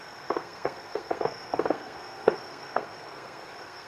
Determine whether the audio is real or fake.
fake